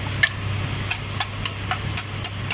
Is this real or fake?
real